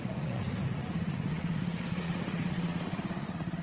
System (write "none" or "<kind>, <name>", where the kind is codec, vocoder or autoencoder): vocoder, Vocos